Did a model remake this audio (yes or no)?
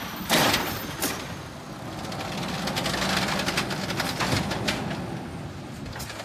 no